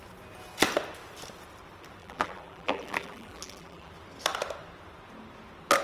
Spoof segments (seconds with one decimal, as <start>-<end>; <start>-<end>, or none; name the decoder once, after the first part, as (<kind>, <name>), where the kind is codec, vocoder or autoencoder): 2.0-3.9 (vocoder, BigVGAN v2)